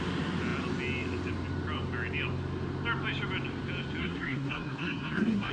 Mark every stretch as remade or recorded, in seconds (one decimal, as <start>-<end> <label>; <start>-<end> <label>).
0.0-4.0 recorded; 4.0-5.5 remade